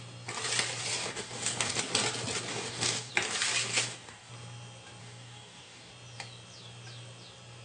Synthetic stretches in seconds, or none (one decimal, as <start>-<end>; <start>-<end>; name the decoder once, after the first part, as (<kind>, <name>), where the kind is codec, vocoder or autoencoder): 1.0-1.8 (codec, DAC); 2.5-3.1; 3.7-4.3; 5.0-5.9